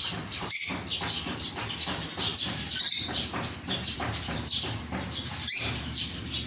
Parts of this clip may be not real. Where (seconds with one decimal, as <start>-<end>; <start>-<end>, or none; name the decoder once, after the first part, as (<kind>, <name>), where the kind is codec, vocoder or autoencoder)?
2.3-6.5 (vocoder, BigVGAN v2)